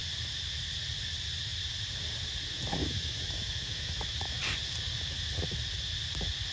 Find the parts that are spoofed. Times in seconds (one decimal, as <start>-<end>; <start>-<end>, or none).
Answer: 2.8-4.4